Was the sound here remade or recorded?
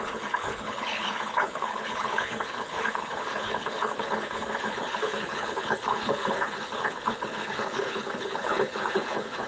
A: remade